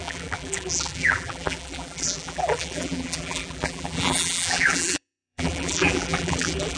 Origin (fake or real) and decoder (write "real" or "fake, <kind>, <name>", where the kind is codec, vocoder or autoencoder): fake, vocoder, BigVGAN v2